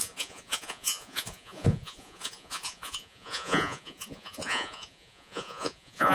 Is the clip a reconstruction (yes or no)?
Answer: yes